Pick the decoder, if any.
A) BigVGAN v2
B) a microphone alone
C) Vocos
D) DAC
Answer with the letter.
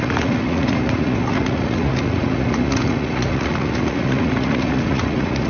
C